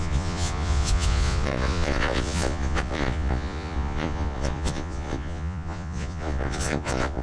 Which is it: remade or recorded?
remade